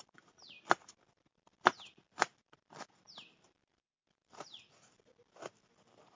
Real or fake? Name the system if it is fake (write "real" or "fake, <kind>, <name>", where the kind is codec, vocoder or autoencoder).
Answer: real